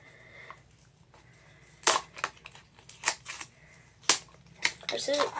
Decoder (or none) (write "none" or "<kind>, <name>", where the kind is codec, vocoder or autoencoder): none